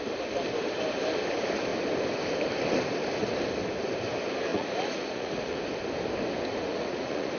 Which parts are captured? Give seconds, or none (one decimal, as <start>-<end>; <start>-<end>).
0.0-4.5; 5.6-6.5